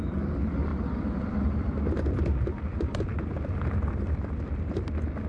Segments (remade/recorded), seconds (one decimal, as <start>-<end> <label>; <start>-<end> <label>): 0.0-0.7 recorded; 0.7-1.7 remade; 1.7-2.7 recorded; 2.7-3.5 remade; 3.5-5.3 recorded